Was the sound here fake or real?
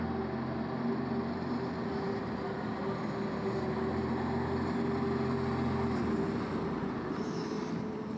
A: real